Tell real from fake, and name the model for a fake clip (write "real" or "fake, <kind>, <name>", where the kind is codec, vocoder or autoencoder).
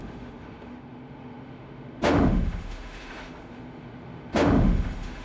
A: fake, autoencoder, DAC-VAE